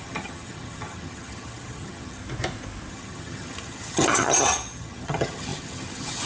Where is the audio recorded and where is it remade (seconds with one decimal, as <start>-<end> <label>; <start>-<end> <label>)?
0.0-2.2 remade; 2.2-2.9 recorded; 2.9-6.3 remade